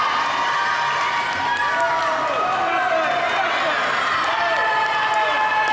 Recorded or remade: recorded